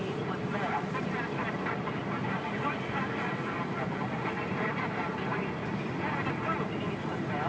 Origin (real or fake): real